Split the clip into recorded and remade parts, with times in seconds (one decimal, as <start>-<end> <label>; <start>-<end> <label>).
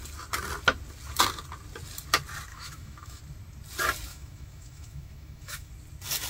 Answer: 0.0-2.5 recorded; 2.5-3.2 remade; 3.2-4.1 recorded; 4.1-5.7 remade; 5.7-6.3 recorded